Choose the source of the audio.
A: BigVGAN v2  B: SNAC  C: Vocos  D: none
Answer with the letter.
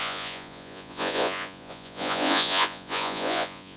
C